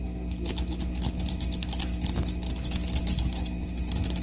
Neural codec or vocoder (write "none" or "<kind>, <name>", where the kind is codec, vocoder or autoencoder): none